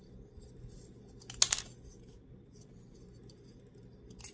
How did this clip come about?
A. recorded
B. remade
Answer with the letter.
A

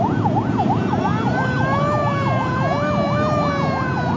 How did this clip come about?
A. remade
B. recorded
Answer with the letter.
B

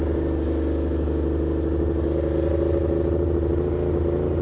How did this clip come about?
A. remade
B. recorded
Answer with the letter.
B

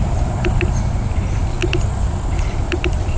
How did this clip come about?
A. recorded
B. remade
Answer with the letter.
A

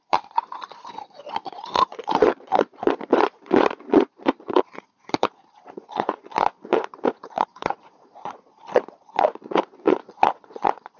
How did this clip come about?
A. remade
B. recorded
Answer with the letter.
A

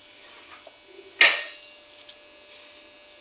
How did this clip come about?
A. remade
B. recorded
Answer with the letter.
B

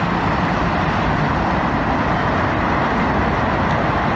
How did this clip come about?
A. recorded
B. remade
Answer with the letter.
A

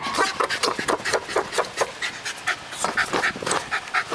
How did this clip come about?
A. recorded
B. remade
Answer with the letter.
A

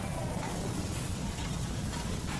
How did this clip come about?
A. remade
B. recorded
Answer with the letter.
A